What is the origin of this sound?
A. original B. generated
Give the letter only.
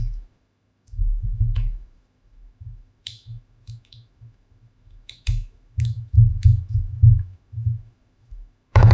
B